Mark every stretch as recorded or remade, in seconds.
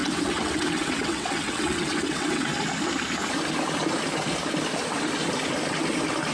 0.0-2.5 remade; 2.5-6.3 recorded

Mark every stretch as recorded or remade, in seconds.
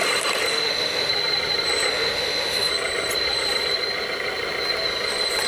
0.0-0.5 recorded; 0.5-1.1 remade; 1.1-1.9 recorded; 1.9-2.7 remade; 2.7-5.5 recorded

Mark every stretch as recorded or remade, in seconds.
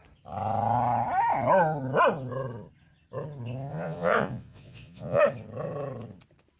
0.0-3.7 recorded; 3.7-5.2 remade; 5.2-6.6 recorded